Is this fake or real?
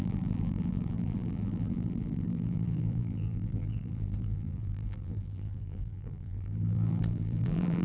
fake